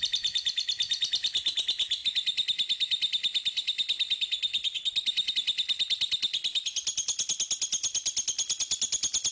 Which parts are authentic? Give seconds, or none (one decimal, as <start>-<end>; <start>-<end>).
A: 0.0-9.3